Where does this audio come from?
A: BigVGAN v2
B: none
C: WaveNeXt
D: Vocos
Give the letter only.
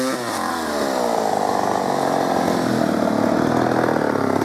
B